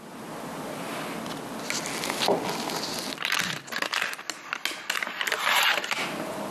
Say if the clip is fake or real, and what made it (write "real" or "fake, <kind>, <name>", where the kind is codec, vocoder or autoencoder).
real